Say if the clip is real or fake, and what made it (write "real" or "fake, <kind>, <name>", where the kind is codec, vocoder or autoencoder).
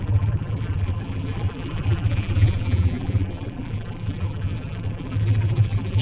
fake, vocoder, BigVGAN v2